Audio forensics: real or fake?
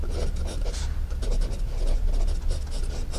real